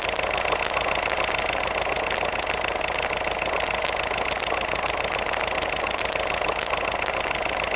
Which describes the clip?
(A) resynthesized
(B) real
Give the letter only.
B